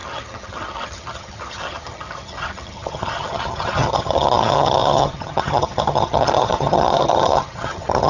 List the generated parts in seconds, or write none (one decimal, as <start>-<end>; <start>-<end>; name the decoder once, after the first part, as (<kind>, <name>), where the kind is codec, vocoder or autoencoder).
0.0-8.1 (vocoder, HiFi-GAN)